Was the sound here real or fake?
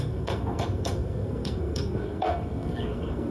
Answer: fake